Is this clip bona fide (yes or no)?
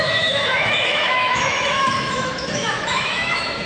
no